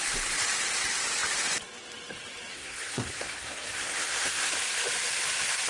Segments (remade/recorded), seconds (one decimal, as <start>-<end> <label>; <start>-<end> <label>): 0.0-2.5 recorded; 2.5-4.5 remade; 4.5-5.7 recorded